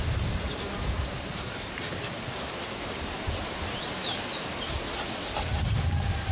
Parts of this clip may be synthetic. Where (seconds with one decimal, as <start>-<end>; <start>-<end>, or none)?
0.0-6.3